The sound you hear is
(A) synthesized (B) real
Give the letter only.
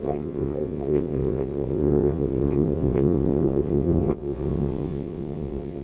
A